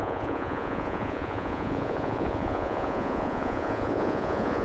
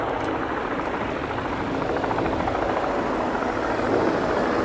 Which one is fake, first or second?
first